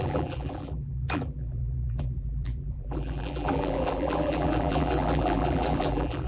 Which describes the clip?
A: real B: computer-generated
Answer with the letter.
B